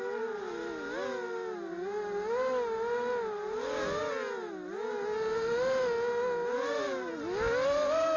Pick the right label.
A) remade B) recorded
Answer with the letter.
B